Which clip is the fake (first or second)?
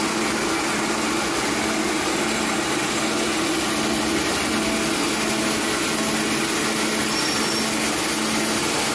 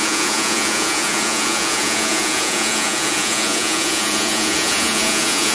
second